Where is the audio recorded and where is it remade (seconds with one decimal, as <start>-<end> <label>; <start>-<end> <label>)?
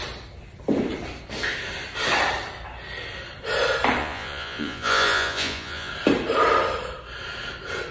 0.0-4.0 recorded; 4.0-5.9 remade; 5.9-7.9 recorded